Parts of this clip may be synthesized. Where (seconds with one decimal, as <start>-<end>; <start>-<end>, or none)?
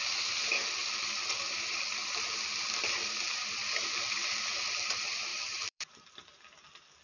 0.8-2.0; 5.3-6.0